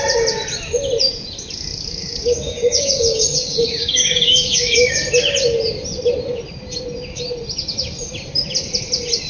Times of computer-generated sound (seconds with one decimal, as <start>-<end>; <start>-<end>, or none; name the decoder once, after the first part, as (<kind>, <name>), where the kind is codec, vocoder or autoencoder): 2.0-5.0 (codec, DAC)